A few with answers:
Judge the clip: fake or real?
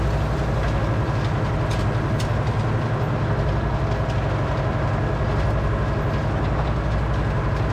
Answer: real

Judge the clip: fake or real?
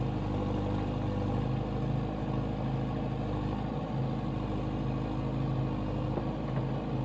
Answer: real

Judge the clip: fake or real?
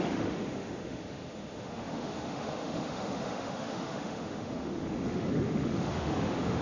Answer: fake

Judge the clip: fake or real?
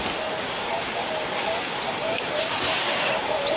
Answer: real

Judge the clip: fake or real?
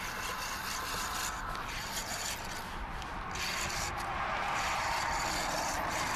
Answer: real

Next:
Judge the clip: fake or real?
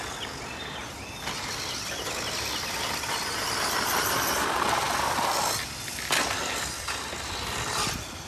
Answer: real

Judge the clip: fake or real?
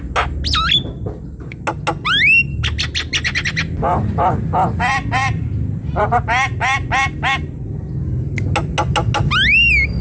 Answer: real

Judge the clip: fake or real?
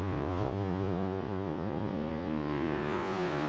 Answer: fake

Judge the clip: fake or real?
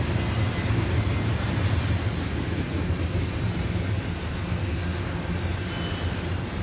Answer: real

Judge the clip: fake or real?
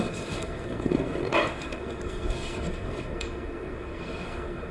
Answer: fake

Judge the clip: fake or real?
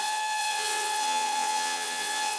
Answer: fake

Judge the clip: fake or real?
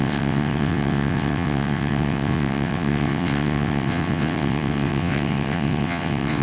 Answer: fake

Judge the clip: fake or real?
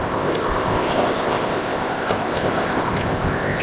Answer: fake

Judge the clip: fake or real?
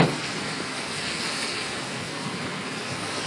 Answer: fake